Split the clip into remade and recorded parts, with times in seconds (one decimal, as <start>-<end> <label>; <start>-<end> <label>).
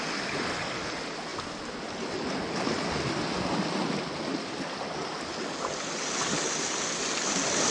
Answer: 0.0-7.7 recorded